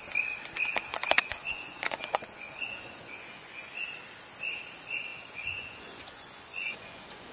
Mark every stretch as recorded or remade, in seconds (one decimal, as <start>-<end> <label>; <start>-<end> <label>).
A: 0.0-0.7 recorded; 0.7-3.7 remade; 3.7-5.1 recorded; 5.1-7.3 remade